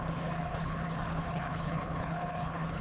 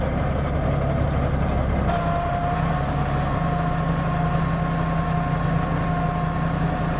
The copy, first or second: first